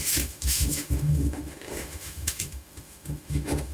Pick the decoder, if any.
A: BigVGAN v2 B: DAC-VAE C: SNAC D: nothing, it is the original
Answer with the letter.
B